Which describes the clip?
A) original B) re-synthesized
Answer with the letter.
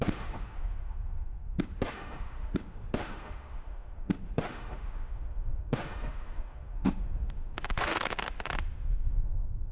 B